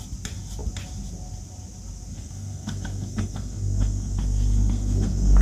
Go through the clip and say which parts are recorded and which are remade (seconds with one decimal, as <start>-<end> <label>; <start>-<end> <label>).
0.0-2.1 recorded; 2.1-5.4 remade